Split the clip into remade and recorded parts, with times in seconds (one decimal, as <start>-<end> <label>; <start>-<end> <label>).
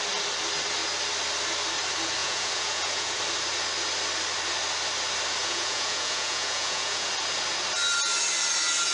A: 0.0-2.2 recorded; 2.2-3.2 remade; 3.2-5.4 recorded; 5.4-7.1 remade; 7.1-8.9 recorded